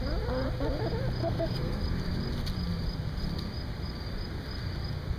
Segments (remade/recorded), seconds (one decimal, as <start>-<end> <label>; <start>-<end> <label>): 0.0-1.2 recorded; 1.2-1.8 remade; 1.8-5.2 recorded